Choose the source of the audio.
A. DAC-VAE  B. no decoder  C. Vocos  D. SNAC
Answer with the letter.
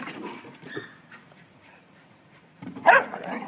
C